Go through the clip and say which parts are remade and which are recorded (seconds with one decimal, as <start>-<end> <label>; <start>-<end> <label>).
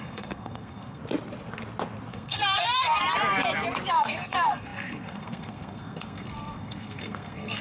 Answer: 0.0-1.0 remade; 1.0-2.1 recorded; 2.1-3.0 remade; 3.0-3.9 recorded; 3.9-7.6 remade